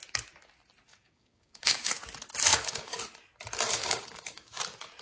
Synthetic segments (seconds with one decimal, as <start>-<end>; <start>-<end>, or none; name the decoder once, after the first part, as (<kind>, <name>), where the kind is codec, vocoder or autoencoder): 0.9-1.9 (codec, DAC); 2.5-3.0; 3.8-4.6